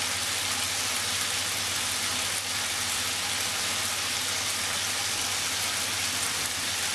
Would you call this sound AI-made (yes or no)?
no